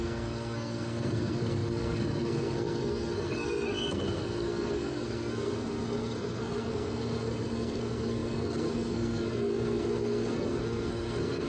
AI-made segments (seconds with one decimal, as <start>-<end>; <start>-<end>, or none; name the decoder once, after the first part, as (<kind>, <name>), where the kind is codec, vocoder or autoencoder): 0.0-11.5 (codec, SNAC)